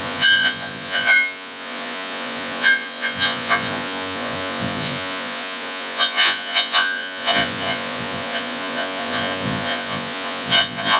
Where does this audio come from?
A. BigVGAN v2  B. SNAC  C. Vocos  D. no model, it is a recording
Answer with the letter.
C